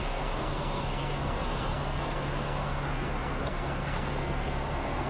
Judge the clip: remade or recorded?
remade